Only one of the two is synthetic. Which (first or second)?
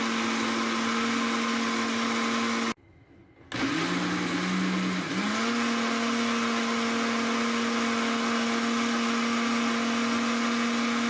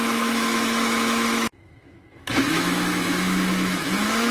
second